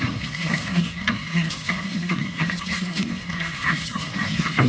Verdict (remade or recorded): remade